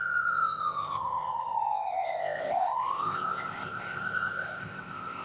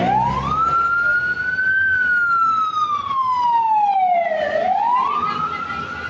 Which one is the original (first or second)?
second